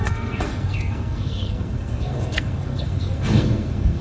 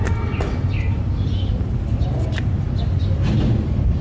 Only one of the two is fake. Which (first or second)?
first